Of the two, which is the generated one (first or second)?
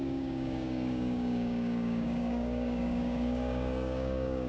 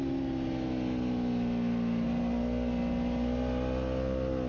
first